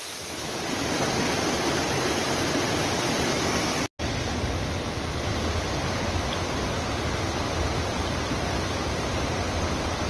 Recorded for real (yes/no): yes